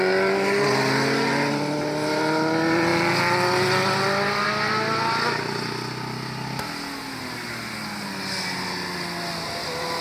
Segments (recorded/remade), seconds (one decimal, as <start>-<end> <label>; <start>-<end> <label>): 0.0-10.0 recorded